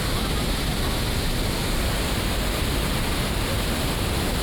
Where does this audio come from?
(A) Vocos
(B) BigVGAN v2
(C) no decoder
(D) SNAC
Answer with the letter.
C